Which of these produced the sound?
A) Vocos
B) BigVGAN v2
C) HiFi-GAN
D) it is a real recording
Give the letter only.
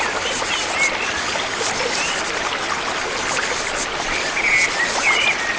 D